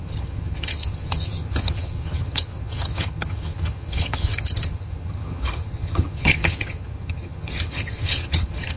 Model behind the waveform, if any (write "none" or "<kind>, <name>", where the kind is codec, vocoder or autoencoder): vocoder, HiFi-GAN